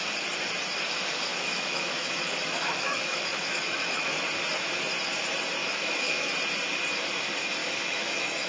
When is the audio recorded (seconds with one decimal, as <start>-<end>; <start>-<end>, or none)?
0.0-1.3; 4.2-5.6; 6.3-7.6